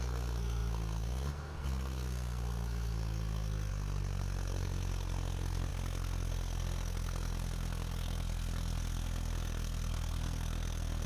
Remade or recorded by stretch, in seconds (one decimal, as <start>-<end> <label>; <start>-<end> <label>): 0.0-11.1 remade